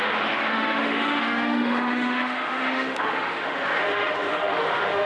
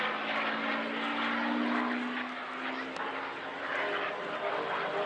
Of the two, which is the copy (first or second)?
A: first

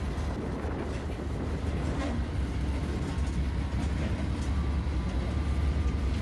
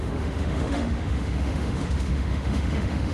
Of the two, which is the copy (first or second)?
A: second